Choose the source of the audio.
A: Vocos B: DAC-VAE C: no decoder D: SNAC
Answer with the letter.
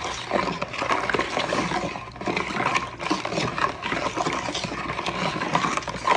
C